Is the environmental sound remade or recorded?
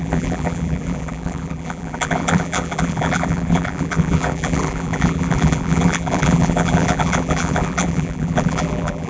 remade